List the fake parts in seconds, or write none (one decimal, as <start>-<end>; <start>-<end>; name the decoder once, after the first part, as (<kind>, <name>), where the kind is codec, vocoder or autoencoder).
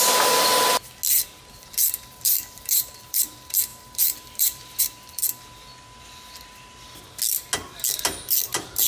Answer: 0.0-0.5 (vocoder, BigVGAN v2); 1.1-5.7; 8.0-8.9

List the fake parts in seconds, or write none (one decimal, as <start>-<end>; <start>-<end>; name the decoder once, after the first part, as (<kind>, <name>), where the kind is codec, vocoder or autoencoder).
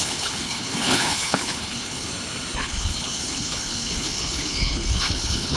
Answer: 0.0-2.1 (codec, HILCodec); 2.6-5.6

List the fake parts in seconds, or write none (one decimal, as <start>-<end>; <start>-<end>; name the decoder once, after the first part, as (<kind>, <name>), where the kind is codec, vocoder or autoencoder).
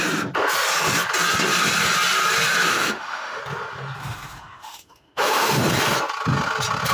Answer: 2.7-3.4 (autoencoder, DAC-VAE); 4.0-5.6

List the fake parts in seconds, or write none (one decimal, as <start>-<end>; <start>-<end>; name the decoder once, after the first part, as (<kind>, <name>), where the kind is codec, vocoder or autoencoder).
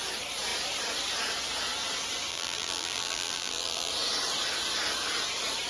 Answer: 2.3-3.9 (vocoder, BigVGAN v2)